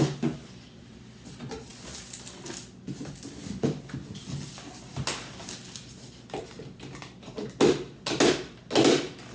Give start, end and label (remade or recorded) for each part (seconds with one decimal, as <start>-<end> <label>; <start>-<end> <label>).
0.0-9.3 recorded